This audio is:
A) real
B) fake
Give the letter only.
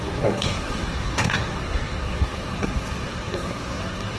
B